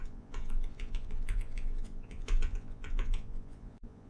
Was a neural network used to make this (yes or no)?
yes